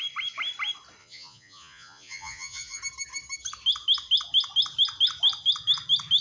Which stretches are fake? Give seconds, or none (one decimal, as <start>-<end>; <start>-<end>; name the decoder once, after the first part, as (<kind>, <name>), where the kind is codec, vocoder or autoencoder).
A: 1.0-2.8 (vocoder, Vocos)